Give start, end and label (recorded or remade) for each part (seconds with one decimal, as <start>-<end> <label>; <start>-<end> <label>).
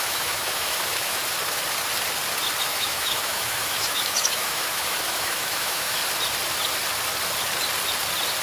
0.0-1.2 remade; 1.2-2.6 recorded; 2.6-6.0 remade; 6.0-8.4 recorded